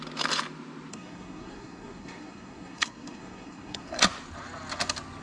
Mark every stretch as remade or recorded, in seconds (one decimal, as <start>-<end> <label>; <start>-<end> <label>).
0.0-0.9 recorded; 0.9-4.0 remade; 4.0-5.2 recorded